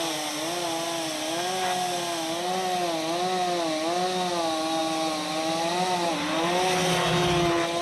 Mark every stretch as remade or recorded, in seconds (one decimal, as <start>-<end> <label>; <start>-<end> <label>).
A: 0.0-7.8 recorded